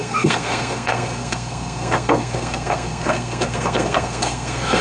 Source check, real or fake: fake